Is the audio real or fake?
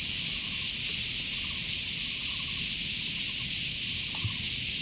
real